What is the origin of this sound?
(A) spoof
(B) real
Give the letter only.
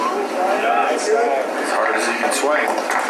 B